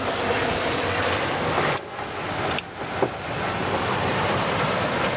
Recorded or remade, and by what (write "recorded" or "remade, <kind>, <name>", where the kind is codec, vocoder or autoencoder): recorded